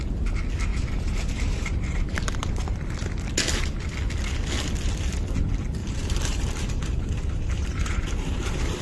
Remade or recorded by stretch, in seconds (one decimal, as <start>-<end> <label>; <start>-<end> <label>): 0.0-0.7 recorded; 0.7-2.8 remade; 2.8-5.8 recorded; 5.8-8.8 remade